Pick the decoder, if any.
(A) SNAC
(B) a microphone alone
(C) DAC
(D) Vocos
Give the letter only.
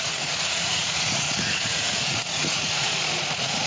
D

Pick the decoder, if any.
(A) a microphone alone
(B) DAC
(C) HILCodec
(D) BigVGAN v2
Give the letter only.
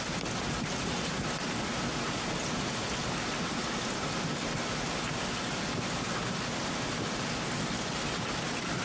A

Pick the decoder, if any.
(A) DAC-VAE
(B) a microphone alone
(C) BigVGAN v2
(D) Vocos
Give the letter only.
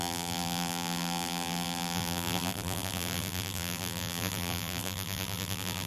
C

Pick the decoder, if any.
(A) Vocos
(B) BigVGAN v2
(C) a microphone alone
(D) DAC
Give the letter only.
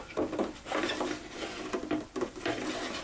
C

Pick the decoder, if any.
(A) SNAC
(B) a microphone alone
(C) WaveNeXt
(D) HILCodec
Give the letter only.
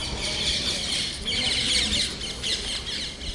B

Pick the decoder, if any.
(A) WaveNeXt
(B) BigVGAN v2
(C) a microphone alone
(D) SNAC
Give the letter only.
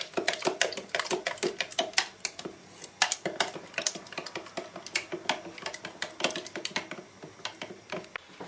C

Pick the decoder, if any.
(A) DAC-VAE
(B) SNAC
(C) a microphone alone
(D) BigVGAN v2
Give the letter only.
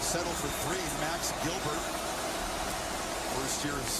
C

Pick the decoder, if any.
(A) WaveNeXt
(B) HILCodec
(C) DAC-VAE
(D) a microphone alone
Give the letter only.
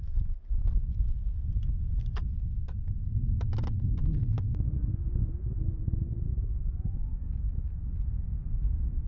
D